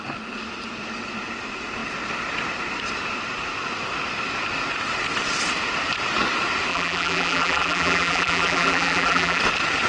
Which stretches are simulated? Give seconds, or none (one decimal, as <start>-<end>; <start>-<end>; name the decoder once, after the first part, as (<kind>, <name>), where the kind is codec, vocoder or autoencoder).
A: 6.7-9.4 (vocoder, BigVGAN v2)